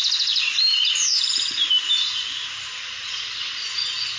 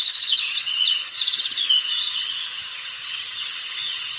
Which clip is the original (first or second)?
first